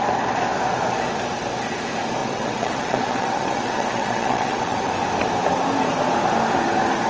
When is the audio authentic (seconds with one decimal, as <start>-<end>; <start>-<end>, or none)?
0.0-2.2; 4.9-7.1